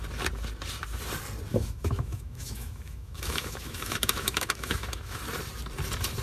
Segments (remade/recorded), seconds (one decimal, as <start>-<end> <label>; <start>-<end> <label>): 0.0-1.5 recorded; 1.5-5.2 remade; 5.2-6.2 recorded